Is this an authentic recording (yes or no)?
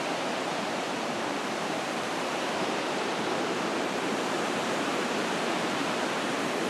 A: no